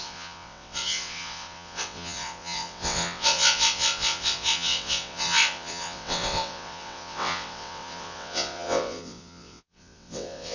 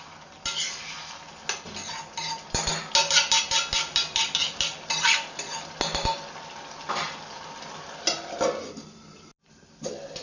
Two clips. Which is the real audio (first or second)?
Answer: second